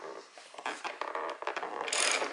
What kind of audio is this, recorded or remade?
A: recorded